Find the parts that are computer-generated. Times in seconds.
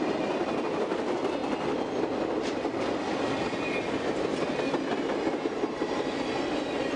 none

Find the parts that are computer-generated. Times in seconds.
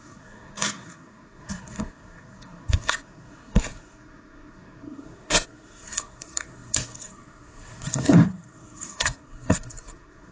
0.0-10.3 (codec, SNAC)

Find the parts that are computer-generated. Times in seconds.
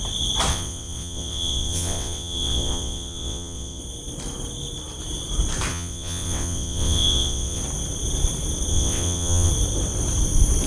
0.5-3.8 (vocoder, WaveNeXt); 5.7-7.6; 8.7-9.5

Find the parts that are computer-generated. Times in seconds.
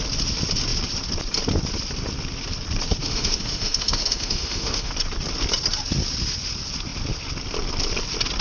3.0-4.9 (autoencoder, DAC-VAE)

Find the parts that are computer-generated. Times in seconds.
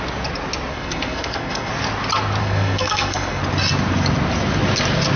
0.7-1.7 (codec, SNAC); 2.4-3.4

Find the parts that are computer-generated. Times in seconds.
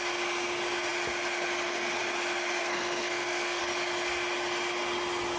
2.6-3.6 (codec, SNAC)